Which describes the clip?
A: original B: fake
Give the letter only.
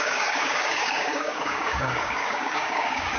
B